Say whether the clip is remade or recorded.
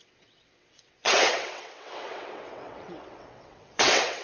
remade